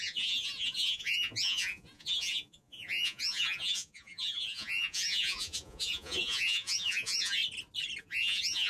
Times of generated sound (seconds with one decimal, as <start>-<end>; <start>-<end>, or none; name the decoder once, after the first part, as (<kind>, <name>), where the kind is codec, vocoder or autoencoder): 0.0-7.4 (vocoder, Vocos); 8.0-8.7